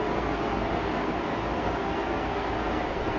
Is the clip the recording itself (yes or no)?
no